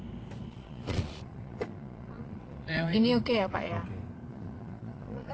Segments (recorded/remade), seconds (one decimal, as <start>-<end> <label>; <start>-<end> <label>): 0.0-0.5 recorded; 0.5-3.7 remade; 3.7-4.3 recorded; 4.3-5.3 remade